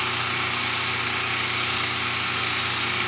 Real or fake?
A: real